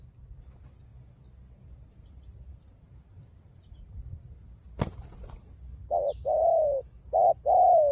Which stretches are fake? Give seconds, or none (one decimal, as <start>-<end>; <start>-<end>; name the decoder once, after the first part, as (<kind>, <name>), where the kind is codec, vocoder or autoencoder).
6.5-7.0 (autoencoder, DAC-VAE)